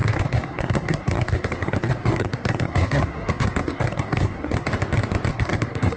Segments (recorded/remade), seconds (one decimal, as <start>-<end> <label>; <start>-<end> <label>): 0.0-4.7 remade; 4.7-5.3 recorded; 5.3-6.0 remade